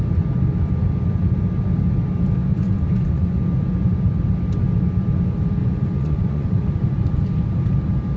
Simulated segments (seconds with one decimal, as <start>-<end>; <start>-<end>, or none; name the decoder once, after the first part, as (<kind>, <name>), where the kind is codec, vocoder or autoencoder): 2.5-3.4 (vocoder, Vocos); 5.6-6.6